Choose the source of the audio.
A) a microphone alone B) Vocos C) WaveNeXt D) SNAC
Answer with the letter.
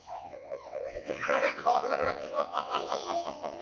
C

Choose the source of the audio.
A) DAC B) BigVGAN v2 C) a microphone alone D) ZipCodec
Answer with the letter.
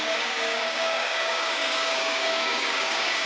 A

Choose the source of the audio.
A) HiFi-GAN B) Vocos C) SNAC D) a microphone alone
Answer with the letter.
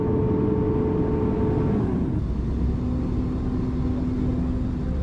D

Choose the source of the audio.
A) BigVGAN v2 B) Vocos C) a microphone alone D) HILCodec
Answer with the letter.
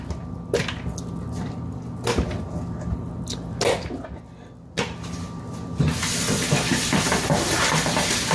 C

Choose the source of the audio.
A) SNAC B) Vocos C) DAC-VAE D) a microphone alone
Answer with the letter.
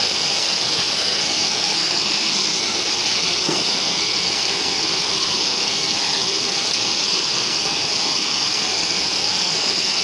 A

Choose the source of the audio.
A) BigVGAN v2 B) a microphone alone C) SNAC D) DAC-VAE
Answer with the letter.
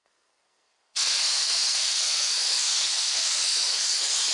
C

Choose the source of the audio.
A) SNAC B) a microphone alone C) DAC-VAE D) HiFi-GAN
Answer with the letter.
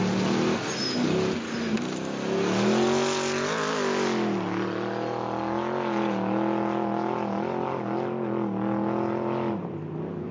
B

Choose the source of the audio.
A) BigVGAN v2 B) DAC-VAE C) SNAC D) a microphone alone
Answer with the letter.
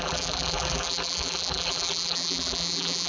A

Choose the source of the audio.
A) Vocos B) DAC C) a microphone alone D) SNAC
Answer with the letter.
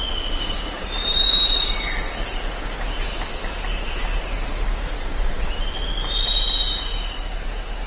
C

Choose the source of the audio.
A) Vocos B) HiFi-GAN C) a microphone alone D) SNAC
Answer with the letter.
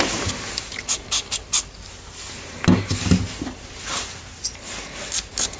C